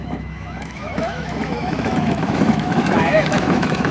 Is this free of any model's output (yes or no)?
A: no